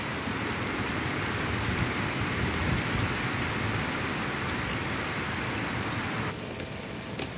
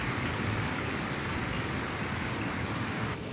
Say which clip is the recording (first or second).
first